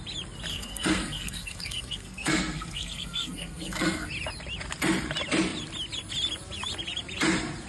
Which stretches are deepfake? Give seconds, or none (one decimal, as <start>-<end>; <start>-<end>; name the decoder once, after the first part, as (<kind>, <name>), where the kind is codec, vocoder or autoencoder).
0.5-4.1 (codec, SNAC)

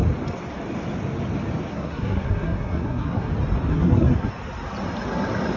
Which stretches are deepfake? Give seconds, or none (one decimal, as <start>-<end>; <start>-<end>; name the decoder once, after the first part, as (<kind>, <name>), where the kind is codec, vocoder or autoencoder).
1.7-3.3 (codec, SNAC); 3.7-4.3

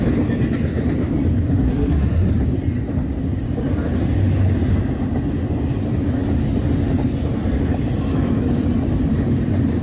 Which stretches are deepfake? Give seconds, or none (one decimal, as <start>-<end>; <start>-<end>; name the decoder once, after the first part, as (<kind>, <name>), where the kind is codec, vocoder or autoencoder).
1.7-2.3 (codec, SNAC)

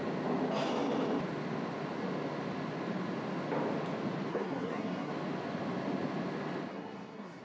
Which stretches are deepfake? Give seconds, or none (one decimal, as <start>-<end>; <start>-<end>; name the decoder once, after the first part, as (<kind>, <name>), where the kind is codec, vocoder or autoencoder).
4.3-5.1 (codec, SNAC); 6.7-7.4

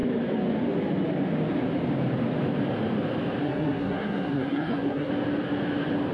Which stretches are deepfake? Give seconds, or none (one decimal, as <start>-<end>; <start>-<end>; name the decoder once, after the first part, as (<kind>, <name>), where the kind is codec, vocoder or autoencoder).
3.4-5.1 (codec, SNAC)

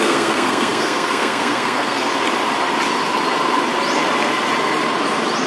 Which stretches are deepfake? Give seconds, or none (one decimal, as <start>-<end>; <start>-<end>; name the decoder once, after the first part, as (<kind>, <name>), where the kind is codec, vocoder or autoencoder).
0.0-2.1 (codec, SNAC)